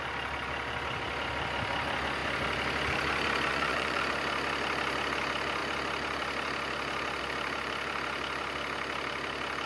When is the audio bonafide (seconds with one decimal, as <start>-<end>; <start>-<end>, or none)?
0.0-3.5; 4.0-9.7